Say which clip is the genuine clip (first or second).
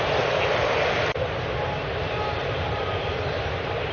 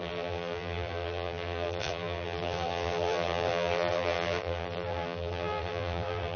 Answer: first